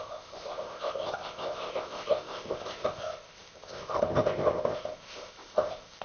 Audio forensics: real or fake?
fake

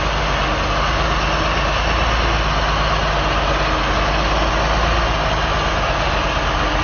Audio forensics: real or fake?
real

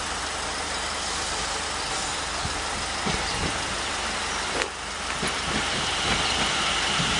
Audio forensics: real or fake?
real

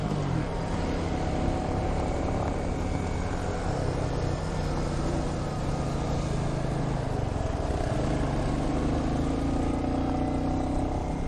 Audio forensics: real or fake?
real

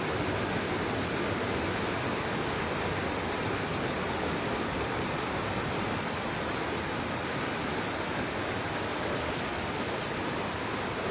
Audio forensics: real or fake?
real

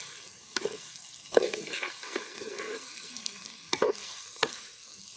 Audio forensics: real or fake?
fake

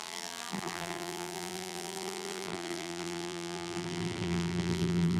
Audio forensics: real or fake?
fake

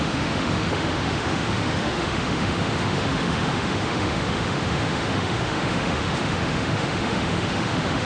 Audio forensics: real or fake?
fake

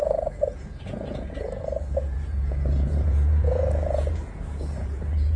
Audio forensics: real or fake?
fake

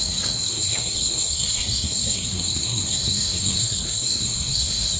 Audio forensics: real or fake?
fake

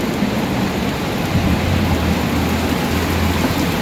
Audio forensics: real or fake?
real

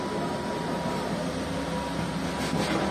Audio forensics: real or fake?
real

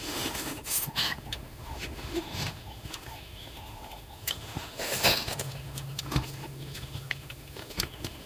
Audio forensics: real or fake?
fake